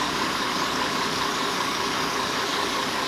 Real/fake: fake